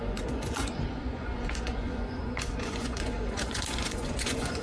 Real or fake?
fake